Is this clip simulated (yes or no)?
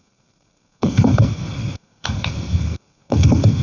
yes